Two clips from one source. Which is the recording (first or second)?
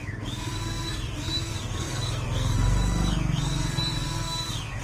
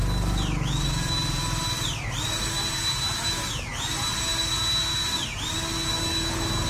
second